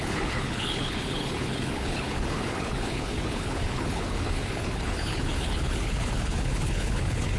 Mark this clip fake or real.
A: fake